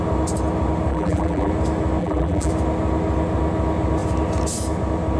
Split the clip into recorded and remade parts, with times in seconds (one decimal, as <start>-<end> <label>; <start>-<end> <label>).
0.0-0.9 recorded; 0.9-1.5 remade; 1.5-2.0 recorded; 2.0-2.5 remade; 2.5-5.2 recorded